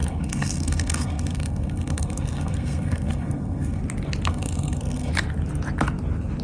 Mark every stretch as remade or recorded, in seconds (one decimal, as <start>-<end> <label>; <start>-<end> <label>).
0.0-3.8 remade; 3.8-4.3 recorded; 4.3-5.1 remade; 5.1-6.4 recorded

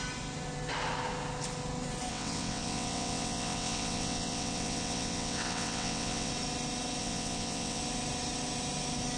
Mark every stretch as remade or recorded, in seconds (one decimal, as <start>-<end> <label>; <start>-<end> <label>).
0.0-2.1 recorded; 2.1-6.3 remade; 6.3-7.0 recorded; 7.0-7.8 remade; 7.8-9.2 recorded

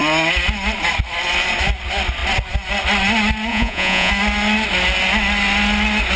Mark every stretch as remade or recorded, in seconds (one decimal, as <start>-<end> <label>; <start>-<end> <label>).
0.0-3.5 recorded; 3.5-4.1 remade; 4.1-6.2 recorded